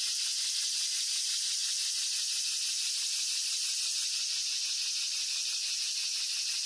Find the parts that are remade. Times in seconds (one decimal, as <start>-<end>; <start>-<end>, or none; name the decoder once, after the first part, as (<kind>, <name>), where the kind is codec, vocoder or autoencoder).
none